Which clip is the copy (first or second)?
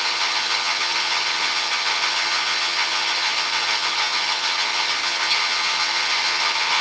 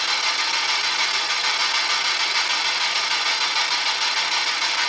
first